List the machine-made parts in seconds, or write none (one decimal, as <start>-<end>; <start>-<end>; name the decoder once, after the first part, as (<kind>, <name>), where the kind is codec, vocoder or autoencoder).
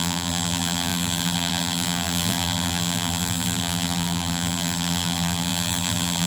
0.0-6.3 (vocoder, BigVGAN v2)